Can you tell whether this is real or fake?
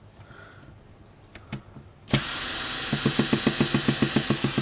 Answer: real